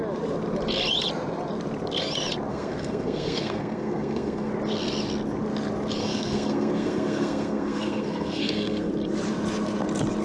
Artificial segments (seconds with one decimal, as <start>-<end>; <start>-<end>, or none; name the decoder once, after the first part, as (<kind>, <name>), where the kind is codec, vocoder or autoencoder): 2.5-4.5 (codec, SNAC); 6.0-8.9